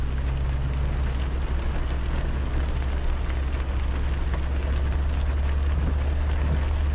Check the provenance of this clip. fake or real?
real